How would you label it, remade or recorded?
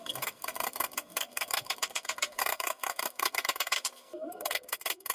remade